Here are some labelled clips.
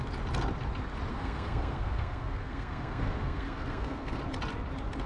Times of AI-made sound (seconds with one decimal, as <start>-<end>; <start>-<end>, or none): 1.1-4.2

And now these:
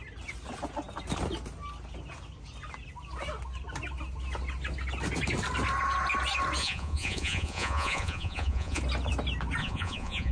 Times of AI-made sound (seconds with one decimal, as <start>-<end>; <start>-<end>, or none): 6.6-8.8; 9.6-10.3

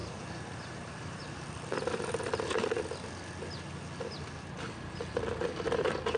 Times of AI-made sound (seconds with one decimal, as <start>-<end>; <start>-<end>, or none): 0.0-2.0

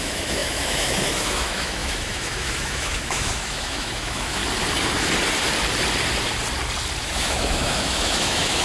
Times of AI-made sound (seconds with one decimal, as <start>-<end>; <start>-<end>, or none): 0.0-4.4; 7.0-8.6

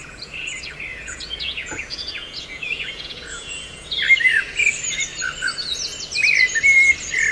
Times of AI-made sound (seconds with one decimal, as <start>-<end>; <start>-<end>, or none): 0.0-0.5; 0.9-4.0